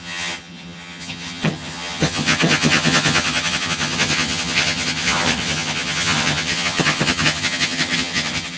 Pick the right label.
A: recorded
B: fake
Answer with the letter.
B